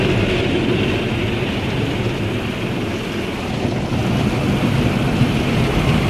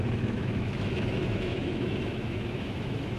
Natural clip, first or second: first